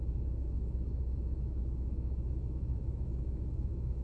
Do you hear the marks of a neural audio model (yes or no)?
yes